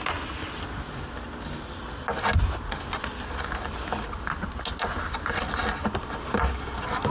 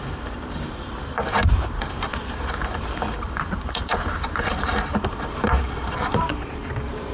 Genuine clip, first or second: first